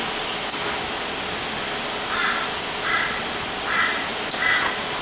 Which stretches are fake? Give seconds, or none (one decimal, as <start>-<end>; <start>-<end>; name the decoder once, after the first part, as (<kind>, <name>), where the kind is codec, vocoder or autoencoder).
none